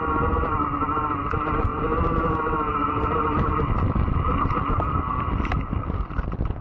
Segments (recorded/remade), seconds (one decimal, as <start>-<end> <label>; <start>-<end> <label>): 0.0-6.6 recorded